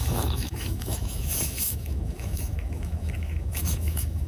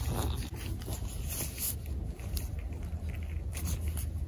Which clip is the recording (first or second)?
second